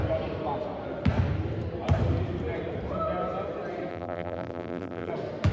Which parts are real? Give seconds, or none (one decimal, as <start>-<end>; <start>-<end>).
0.0-3.9; 5.1-5.5